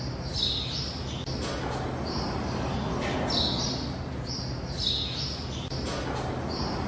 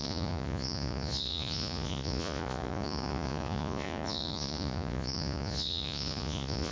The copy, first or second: second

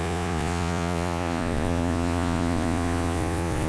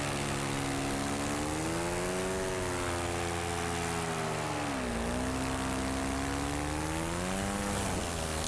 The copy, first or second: first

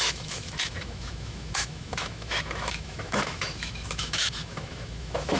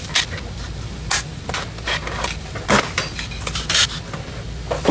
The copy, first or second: first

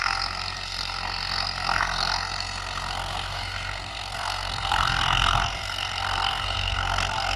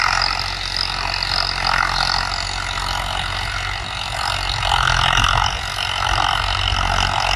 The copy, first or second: first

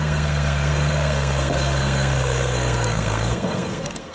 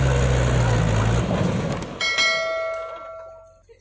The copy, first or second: first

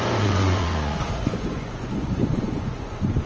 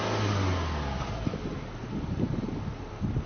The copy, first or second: first